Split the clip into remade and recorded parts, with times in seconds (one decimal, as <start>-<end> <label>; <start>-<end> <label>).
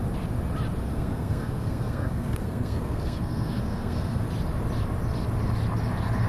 0.0-0.9 recorded; 0.9-4.2 remade; 4.2-6.3 recorded